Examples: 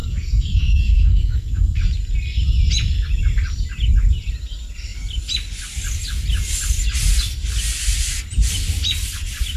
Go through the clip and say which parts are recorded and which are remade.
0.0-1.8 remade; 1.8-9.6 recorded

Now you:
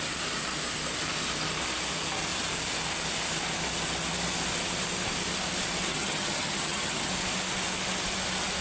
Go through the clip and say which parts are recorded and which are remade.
0.0-5.9 recorded; 5.9-7.1 remade; 7.1-8.6 recorded

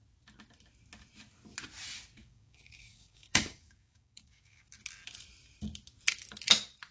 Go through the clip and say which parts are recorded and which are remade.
0.0-2.2 recorded; 2.2-4.7 remade; 4.7-6.9 recorded

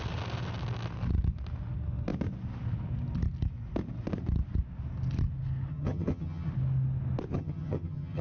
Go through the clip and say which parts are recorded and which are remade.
0.0-5.7 recorded; 5.7-6.5 remade; 6.5-7.3 recorded; 7.3-8.2 remade

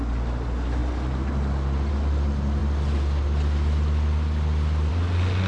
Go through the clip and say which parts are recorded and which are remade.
0.0-5.5 recorded